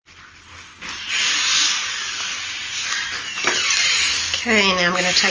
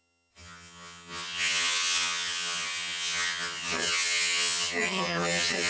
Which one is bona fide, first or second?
first